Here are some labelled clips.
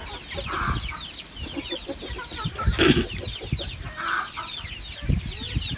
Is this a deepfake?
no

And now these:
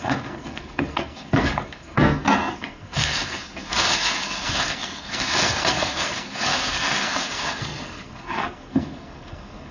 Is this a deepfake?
yes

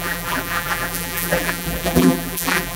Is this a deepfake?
yes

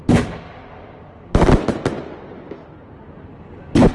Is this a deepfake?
no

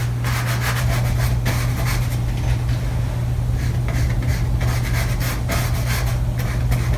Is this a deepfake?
no